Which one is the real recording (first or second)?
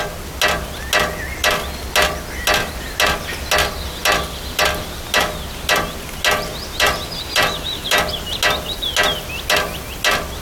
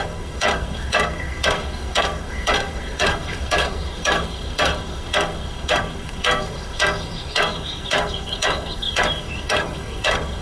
first